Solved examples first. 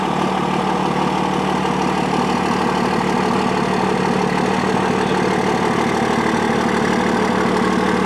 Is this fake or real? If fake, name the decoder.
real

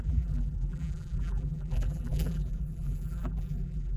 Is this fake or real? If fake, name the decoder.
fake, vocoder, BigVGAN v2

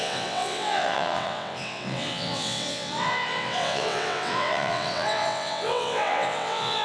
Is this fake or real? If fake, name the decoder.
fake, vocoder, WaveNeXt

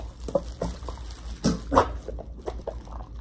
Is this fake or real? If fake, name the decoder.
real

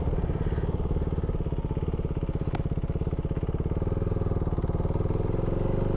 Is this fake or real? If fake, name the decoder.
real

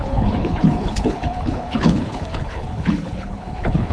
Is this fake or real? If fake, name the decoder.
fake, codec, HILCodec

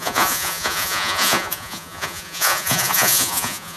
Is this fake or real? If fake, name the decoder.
fake, vocoder, Vocos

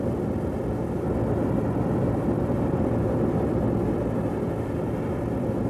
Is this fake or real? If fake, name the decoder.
fake, vocoder, BigVGAN v2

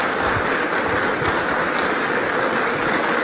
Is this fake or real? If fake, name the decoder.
real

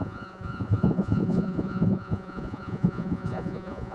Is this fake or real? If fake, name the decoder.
fake, vocoder, Vocos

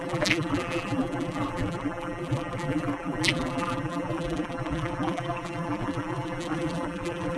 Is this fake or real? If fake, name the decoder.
fake, vocoder, BigVGAN v2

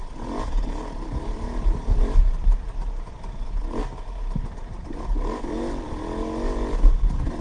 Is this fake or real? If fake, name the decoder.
real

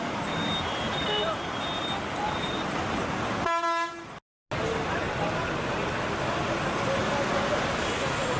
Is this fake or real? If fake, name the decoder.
real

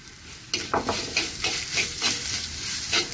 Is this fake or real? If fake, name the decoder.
real